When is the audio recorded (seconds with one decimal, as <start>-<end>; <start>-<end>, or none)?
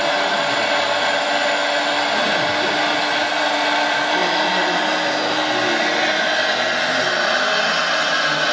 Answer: 0.0-8.5